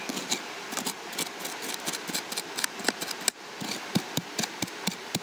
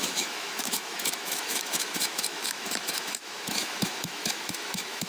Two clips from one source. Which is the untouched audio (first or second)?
first